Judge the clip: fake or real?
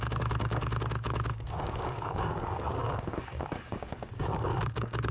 fake